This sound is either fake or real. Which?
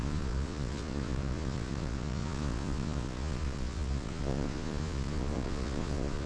fake